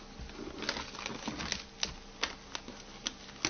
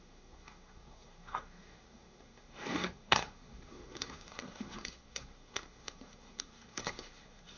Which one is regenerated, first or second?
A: second